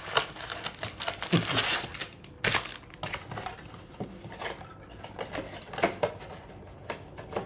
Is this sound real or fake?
real